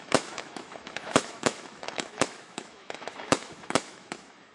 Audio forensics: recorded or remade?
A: remade